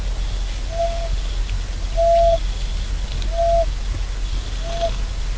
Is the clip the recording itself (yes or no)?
yes